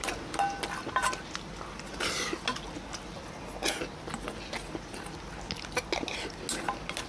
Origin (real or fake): real